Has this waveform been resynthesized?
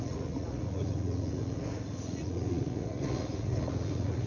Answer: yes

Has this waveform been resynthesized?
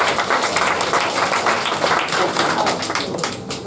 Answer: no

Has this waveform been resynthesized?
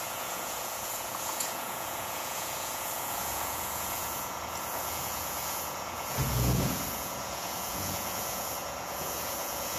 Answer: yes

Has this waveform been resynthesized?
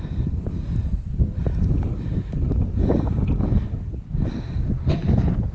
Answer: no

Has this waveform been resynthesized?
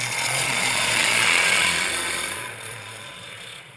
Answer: yes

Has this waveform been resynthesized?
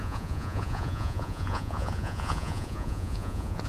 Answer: yes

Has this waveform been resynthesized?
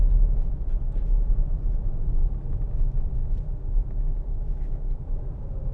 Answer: no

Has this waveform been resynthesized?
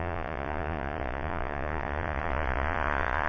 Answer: yes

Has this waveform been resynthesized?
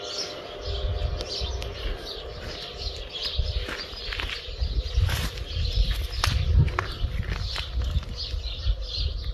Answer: no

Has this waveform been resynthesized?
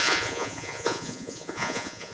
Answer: yes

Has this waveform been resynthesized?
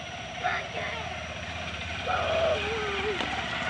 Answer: no